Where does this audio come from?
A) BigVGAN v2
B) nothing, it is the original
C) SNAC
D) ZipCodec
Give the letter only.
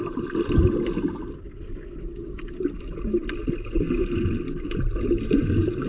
B